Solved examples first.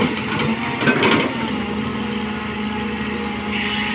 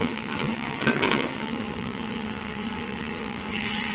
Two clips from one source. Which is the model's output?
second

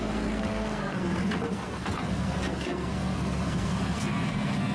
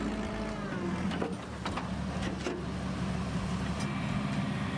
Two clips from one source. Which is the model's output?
first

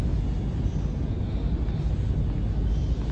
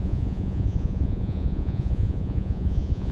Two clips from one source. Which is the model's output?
second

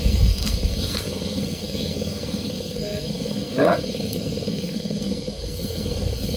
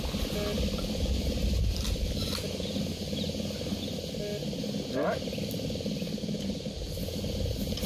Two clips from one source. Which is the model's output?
first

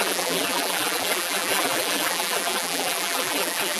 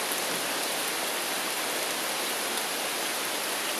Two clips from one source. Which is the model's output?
first